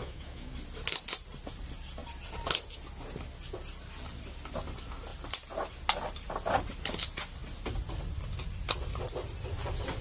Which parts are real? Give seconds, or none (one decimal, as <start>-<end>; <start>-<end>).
0.5-10.0